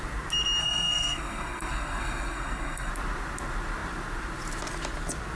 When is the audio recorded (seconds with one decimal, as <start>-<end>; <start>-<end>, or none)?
0.0-0.6; 2.9-5.4